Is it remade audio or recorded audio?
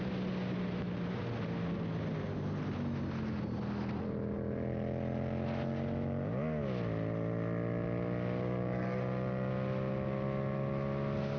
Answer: recorded